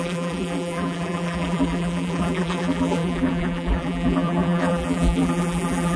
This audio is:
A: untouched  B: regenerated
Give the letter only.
B